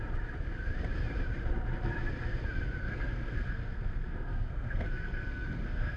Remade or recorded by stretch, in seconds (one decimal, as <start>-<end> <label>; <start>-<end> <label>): 0.0-2.8 recorded; 2.8-6.0 remade